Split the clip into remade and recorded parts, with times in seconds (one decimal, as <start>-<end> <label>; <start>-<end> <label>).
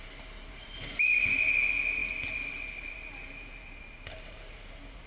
0.0-5.1 recorded